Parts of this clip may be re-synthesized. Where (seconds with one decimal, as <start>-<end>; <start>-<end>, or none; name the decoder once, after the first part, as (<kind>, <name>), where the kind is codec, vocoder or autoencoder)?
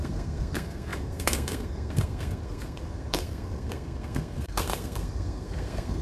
0.0-6.0 (codec, SNAC)